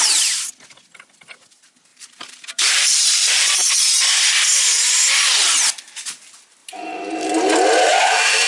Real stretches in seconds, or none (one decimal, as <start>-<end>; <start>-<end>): 0.0-1.9; 4.0-6.6; 7.1-7.9

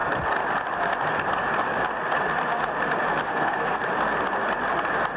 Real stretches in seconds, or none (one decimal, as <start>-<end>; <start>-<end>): 0.0-3.2; 3.8-5.2

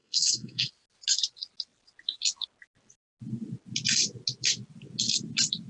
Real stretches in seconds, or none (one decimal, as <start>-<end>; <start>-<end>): 0.7-5.7

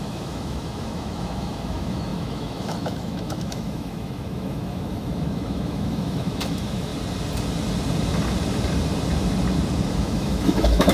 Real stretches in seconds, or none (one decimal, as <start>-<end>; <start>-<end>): 6.9-9.9

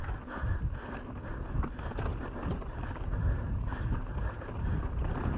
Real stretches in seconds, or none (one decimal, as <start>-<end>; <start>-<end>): 0.0-2.1; 4.5-5.4

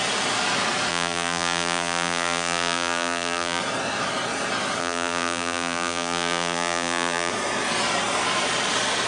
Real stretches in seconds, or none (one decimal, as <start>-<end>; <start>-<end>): 0.0-0.9; 3.6-4.8; 7.3-9.1